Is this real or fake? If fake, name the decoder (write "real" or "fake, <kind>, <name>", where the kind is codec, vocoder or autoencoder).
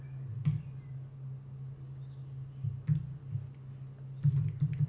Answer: real